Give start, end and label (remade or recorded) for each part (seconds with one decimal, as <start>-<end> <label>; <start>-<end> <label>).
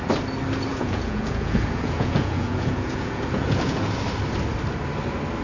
0.0-0.7 recorded; 0.7-3.9 remade; 3.9-5.4 recorded